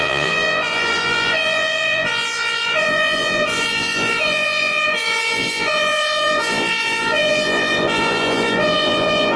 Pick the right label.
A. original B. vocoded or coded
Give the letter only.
B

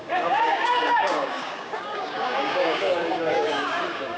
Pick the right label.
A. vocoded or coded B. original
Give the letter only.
A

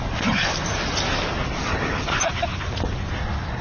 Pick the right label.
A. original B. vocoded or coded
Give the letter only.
A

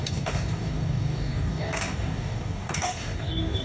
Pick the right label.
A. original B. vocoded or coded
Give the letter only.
B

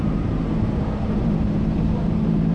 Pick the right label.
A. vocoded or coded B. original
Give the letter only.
A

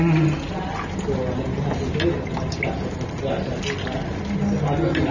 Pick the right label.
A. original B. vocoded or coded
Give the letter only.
A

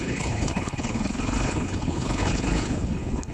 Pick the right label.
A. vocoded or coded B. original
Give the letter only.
A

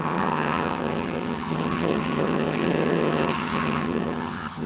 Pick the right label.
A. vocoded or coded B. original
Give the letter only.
A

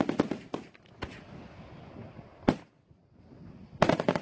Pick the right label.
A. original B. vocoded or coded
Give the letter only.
A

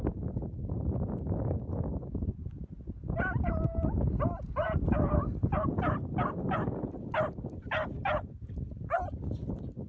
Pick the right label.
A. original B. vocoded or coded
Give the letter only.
A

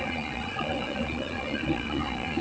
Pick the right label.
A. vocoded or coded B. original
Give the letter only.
A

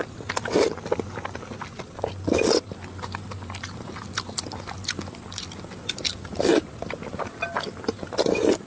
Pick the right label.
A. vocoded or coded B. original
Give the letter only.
B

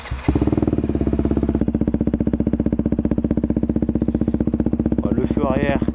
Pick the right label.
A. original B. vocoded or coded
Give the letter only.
A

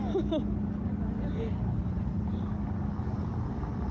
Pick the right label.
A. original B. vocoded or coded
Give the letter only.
A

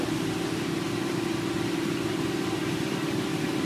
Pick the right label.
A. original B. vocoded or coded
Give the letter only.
B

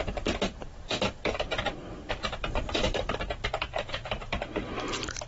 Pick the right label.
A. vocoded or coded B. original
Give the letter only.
A